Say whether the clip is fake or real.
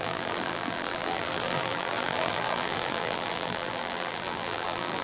fake